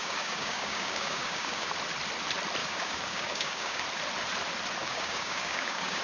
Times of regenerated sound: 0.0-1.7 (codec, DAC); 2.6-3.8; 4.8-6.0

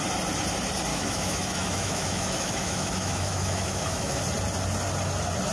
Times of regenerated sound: 0.9-4.2 (autoencoder, DAC-VAE)

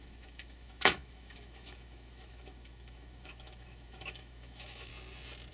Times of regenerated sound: 0.0-4.9 (autoencoder, DAC-VAE)

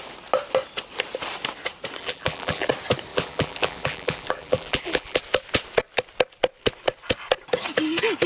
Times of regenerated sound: 2.0-2.7 (vocoder, BigVGAN v2); 3.1-5.2

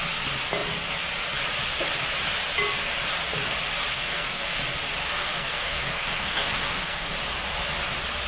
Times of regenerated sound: 3.9-4.6 (codec, SNAC); 5.0-7.1